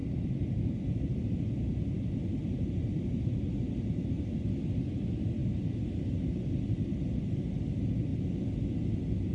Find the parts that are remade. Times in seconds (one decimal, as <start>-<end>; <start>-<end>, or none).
0.0-4.3; 5.4-6.5